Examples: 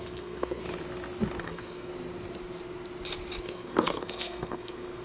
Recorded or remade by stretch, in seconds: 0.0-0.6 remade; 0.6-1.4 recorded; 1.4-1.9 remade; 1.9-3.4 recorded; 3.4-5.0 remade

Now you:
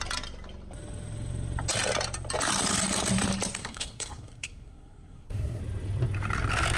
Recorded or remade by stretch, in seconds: 0.0-3.6 recorded; 3.6-5.6 remade; 5.6-6.8 recorded

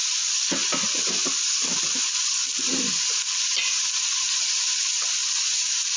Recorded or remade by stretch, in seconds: 0.0-6.0 recorded